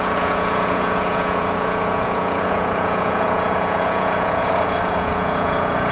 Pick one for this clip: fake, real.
fake